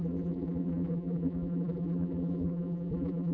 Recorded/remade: remade